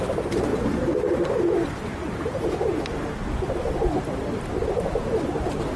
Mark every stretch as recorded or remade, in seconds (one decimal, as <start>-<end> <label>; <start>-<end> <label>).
0.0-0.5 recorded; 0.5-3.7 remade; 3.7-4.6 recorded; 4.6-5.8 remade